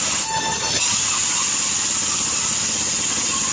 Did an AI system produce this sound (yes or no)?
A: no